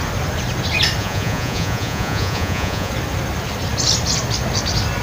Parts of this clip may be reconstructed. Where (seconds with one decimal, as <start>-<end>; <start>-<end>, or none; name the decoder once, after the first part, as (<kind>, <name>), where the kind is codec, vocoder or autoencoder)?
1.0-2.9 (vocoder, Vocos)